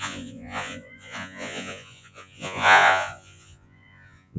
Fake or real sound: fake